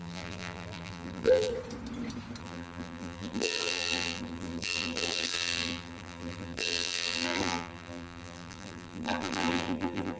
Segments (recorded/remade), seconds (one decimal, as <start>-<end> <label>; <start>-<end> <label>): 0.0-1.5 remade; 1.5-2.4 recorded; 2.4-10.2 remade

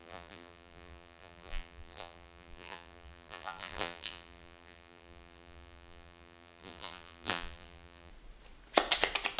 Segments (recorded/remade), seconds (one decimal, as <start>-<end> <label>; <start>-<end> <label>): 0.0-8.1 remade; 8.1-9.4 recorded

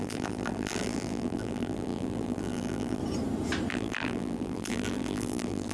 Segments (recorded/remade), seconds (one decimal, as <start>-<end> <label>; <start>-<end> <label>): 0.0-3.0 remade; 3.0-3.7 recorded; 3.7-5.7 remade

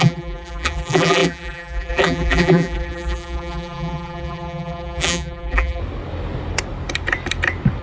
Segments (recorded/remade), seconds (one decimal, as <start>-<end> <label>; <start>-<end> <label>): 0.0-5.8 remade; 5.8-7.8 recorded

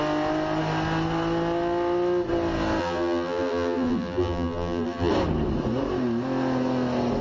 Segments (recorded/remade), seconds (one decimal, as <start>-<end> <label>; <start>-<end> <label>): 0.0-2.8 recorded; 2.8-5.1 remade; 5.1-7.2 recorded

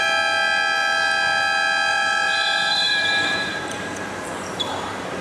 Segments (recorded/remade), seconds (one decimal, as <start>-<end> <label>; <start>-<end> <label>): 0.0-1.9 recorded; 1.9-5.2 remade

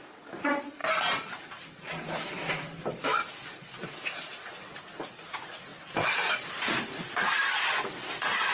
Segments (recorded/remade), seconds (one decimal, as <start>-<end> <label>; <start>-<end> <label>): 0.0-0.8 recorded; 0.8-4.7 remade; 4.7-5.7 recorded; 5.7-8.5 remade

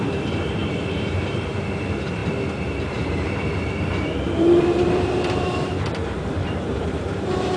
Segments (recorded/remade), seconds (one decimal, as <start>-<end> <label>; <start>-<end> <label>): 0.0-7.6 remade